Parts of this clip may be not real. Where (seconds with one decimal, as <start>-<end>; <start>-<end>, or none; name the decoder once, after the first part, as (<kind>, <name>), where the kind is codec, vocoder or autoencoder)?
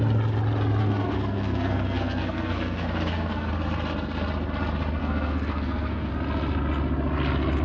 0.8-3.5 (codec, SNAC); 5.0-6.1